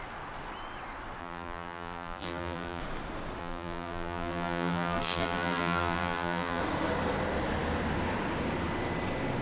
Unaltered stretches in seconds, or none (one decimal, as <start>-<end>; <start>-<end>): 0.0-1.2; 2.8-3.4; 6.6-9.4